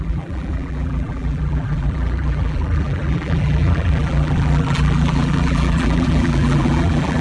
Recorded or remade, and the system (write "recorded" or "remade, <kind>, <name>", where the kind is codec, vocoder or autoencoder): remade, vocoder, BigVGAN v2